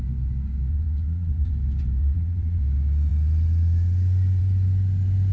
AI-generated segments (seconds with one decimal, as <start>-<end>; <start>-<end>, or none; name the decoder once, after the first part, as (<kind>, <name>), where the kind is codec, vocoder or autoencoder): 0.7-1.5 (vocoder, Vocos); 2.0-2.6

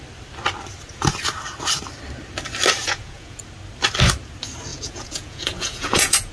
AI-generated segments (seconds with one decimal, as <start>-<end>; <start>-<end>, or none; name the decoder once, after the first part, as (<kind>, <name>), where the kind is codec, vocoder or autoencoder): 2.8-3.4 (vocoder, Vocos); 4.7-6.3

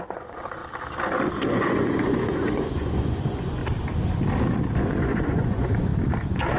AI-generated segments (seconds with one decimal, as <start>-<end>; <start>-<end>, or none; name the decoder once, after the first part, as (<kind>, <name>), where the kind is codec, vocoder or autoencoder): 0.0-0.6 (vocoder, Vocos); 1.5-3.6; 4.8-5.9

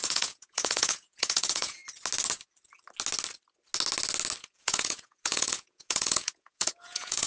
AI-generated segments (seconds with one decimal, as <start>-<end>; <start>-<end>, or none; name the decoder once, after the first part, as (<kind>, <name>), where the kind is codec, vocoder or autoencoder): 0.0-1.8 (vocoder, Vocos); 4.4-7.3

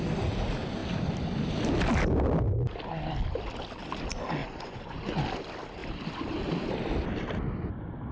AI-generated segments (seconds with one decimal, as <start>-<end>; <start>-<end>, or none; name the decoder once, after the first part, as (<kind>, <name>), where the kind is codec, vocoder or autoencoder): 4.4-5.2 (vocoder, Vocos)

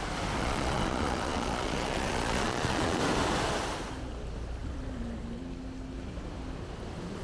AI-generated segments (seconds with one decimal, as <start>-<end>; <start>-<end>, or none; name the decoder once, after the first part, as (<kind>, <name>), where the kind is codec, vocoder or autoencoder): 0.4-3.0 (vocoder, Vocos)

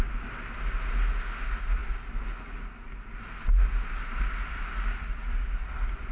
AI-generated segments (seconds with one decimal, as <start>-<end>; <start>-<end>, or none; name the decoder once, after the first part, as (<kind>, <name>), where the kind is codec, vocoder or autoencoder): none